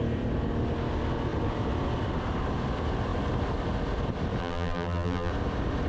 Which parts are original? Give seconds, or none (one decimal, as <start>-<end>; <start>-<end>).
0.0-4.4; 5.3-5.9